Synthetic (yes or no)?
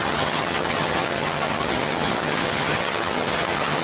yes